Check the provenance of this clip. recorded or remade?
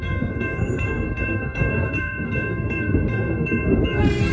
remade